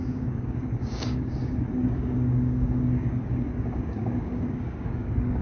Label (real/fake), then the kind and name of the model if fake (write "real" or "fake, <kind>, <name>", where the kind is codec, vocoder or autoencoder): fake, codec, DAC